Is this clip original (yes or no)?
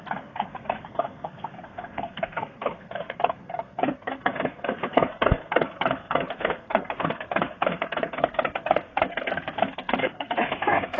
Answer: no